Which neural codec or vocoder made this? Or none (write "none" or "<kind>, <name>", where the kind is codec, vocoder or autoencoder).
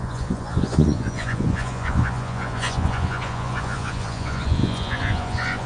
vocoder, Vocos